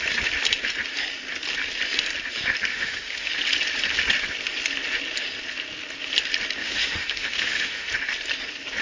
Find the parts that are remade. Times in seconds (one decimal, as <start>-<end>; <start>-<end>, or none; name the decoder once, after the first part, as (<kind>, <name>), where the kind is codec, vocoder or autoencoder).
2.7-3.3 (autoencoder, DAC-VAE); 6.6-7.9